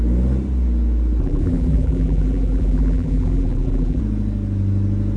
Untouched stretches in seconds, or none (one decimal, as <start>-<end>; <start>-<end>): 0.0-1.2; 4.0-5.2